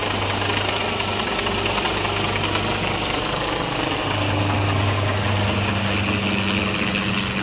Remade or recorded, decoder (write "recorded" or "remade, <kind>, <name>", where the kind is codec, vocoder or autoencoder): recorded